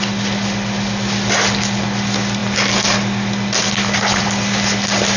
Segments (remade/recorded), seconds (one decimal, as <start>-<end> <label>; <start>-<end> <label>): 0.0-5.2 recorded